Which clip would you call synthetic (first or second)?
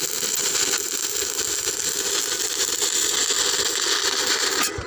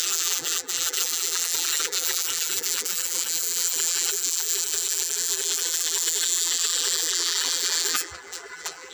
second